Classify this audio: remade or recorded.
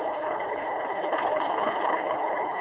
remade